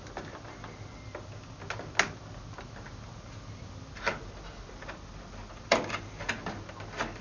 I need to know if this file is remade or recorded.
recorded